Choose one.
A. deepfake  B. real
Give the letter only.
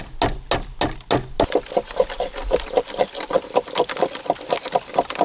B